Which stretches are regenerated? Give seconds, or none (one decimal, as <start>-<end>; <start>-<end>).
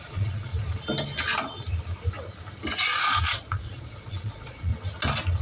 0.0-0.5; 3.0-4.7